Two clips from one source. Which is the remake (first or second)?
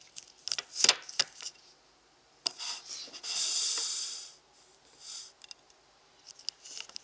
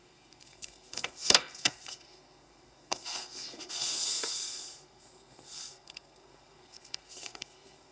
second